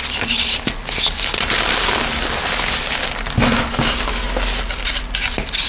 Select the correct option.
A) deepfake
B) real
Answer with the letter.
B